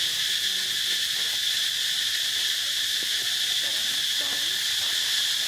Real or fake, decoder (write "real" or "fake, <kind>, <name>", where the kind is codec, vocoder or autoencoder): real